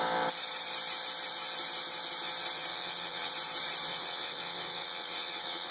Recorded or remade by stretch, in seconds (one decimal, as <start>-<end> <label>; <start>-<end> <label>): 0.0-2.7 recorded; 2.7-3.3 remade; 3.3-3.9 recorded; 3.9-5.7 remade